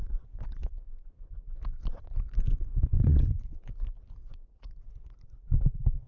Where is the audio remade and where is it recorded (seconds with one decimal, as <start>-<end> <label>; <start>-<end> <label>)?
0.0-0.8 remade; 0.8-2.5 recorded; 2.5-3.7 remade; 3.7-4.2 recorded; 4.2-5.2 remade; 5.2-6.1 recorded